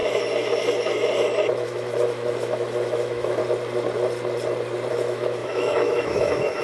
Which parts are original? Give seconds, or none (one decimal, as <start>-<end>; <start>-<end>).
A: 0.0-1.5; 3.4-4.9